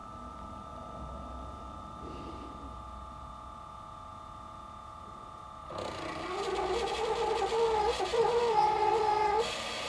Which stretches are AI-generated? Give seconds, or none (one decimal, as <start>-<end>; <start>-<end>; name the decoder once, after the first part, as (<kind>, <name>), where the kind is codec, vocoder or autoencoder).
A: 0.0-2.6 (vocoder, BigVGAN v2); 8.1-9.2